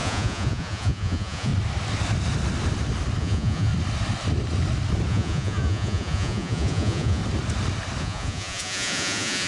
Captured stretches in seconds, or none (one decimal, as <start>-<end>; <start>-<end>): 1.5-3.2; 3.7-5.1; 7.2-8.0